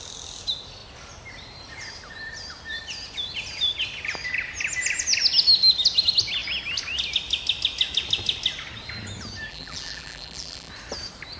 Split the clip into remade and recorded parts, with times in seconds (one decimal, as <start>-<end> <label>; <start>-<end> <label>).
0.0-9.5 recorded; 9.5-10.7 remade; 10.7-11.4 recorded